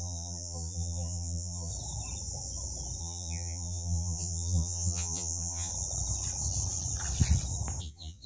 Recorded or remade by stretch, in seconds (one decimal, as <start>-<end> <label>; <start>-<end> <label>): 0.0-1.7 remade; 1.7-3.0 recorded; 3.0-5.7 remade; 5.7-7.8 recorded; 7.8-8.3 remade